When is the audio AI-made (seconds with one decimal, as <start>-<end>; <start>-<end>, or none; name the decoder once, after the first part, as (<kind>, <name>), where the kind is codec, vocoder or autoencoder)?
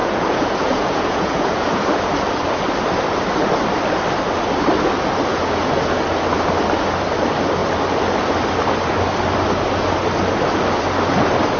0.0-2.0 (vocoder, Vocos); 5.3-6.0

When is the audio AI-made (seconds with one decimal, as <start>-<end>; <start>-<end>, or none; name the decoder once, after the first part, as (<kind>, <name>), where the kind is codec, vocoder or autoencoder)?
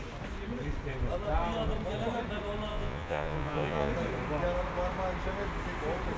2.7-3.9 (vocoder, Vocos)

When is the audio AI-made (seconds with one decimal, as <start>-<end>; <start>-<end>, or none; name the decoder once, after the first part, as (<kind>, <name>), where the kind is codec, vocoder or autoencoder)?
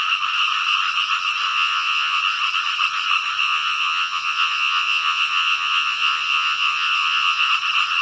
1.5-2.2 (vocoder, Vocos); 3.4-7.5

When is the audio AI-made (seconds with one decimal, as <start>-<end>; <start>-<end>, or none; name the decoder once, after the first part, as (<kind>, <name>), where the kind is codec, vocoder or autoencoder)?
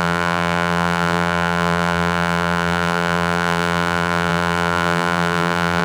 0.0-5.8 (vocoder, BigVGAN v2)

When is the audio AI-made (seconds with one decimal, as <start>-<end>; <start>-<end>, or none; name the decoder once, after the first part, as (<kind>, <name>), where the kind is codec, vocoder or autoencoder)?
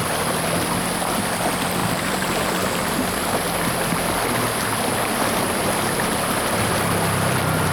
1.8-3.2 (vocoder, BigVGAN v2)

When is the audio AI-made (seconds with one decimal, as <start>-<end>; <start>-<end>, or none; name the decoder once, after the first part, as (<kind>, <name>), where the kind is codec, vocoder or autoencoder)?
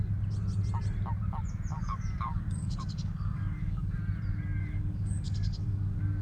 1.7-4.0 (codec, DAC); 4.6-6.2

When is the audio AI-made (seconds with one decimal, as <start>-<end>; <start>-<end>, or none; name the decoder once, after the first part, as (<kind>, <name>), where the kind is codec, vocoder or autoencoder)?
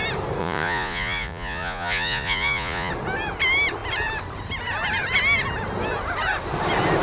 0.4-2.9 (vocoder, Vocos)